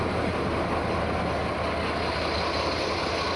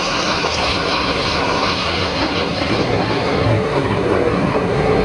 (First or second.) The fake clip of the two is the second